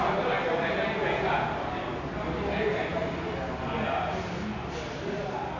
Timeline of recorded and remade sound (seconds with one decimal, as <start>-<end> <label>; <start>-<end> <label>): 0.0-1.0 recorded; 1.0-1.5 remade; 1.5-5.6 recorded

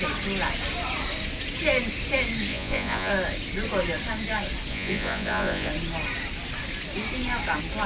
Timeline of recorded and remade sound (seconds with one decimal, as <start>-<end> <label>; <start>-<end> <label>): 0.0-2.5 recorded; 2.5-3.1 remade; 3.1-4.7 recorded; 4.7-5.7 remade; 5.7-7.9 recorded

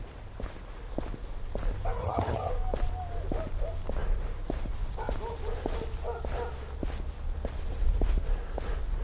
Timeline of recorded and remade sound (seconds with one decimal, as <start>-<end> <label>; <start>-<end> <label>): 0.0-2.0 recorded; 2.0-2.5 remade; 2.5-9.0 recorded

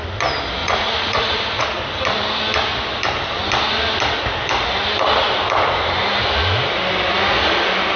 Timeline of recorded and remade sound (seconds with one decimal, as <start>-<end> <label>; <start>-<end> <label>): 0.0-0.6 recorded; 0.6-1.6 remade; 1.6-8.0 recorded

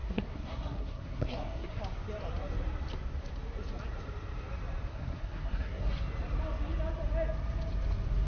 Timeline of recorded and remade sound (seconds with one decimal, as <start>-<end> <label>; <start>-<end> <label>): 0.0-1.8 remade; 1.8-4.9 recorded; 4.9-5.9 remade; 5.9-8.3 recorded

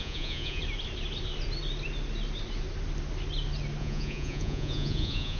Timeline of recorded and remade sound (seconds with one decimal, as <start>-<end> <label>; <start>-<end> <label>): 0.0-0.6 remade; 0.6-3.8 recorded; 3.8-5.4 remade

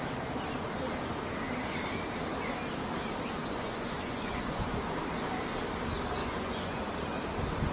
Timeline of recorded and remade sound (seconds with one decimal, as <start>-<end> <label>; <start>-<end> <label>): 0.0-3.4 recorded; 3.4-4.8 remade; 4.8-6.2 recorded; 6.2-6.8 remade; 6.8-7.7 recorded

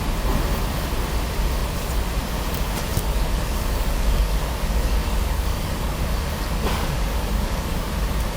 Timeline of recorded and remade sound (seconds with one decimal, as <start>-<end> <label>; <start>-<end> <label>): 0.0-2.9 recorded; 2.9-7.9 remade; 7.9-8.4 recorded